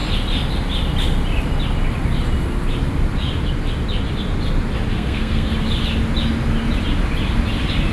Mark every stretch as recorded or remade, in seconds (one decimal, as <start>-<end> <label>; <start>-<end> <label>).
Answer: 0.0-4.9 recorded; 4.9-5.5 remade; 5.5-7.9 recorded

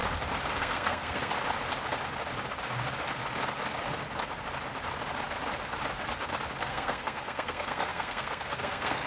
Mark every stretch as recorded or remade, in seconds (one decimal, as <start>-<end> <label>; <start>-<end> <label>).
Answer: 0.0-0.6 recorded; 0.6-1.3 remade; 1.3-6.6 recorded; 6.6-9.1 remade

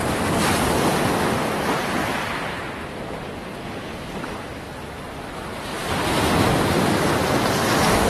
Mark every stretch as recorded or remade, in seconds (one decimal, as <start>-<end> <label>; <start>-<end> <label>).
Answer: 0.0-5.7 recorded; 5.7-6.7 remade; 6.7-8.1 recorded